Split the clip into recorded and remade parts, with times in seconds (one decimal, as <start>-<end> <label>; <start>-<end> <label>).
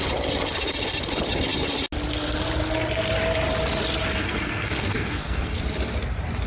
0.0-4.2 recorded; 4.2-5.6 remade; 5.6-6.5 recorded